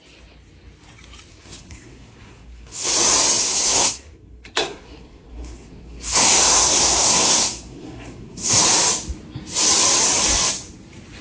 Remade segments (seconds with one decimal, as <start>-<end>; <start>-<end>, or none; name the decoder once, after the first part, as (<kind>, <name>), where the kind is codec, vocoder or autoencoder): 1.3-2.9 (codec, SNAC); 3.4-8.6